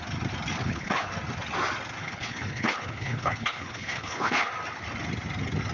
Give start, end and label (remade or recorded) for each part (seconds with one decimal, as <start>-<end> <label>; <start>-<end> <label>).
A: 0.0-0.6 recorded; 0.6-1.1 remade; 1.1-2.0 recorded; 2.0-4.5 remade; 4.5-5.7 recorded